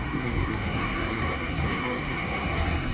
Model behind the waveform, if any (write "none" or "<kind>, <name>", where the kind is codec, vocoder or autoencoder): codec, SNAC